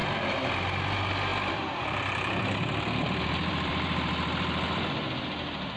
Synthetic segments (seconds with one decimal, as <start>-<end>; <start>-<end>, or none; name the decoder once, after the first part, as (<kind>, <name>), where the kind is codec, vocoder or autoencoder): 0.0-0.5 (vocoder, BigVGAN v2); 1.3-4.8